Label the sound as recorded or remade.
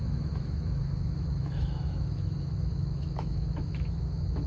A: remade